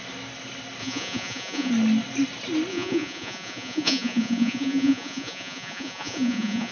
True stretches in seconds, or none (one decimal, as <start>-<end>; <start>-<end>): 0.0-0.8; 1.7-2.7

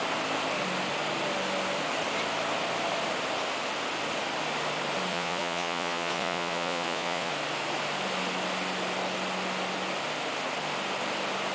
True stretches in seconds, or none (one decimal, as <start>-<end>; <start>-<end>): 0.0-5.1; 7.3-11.5

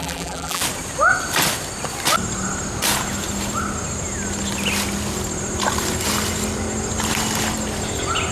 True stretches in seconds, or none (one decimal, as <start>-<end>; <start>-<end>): 0.6-8.3

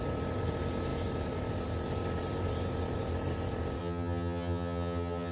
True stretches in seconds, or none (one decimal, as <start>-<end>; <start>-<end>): 0.0-3.8

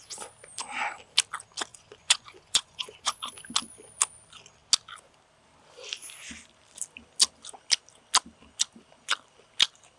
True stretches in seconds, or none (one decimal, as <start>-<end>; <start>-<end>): 0.0-1.7; 3.3-10.0

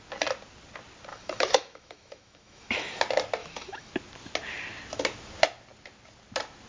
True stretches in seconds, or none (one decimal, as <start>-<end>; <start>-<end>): 0.0-1.1; 3.0-3.4; 3.9-6.7

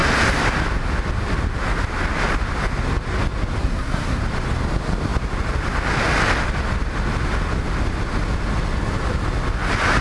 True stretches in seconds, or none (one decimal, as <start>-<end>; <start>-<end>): 0.0-3.6; 4.2-10.0

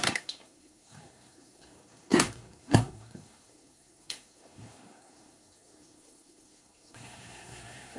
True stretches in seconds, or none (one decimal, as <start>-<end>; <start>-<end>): none